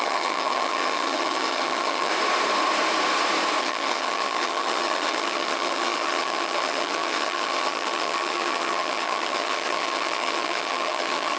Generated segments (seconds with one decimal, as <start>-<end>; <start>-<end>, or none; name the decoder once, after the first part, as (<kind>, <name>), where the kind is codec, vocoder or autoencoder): 0.0-2.1 (vocoder, HiFi-GAN); 3.6-11.4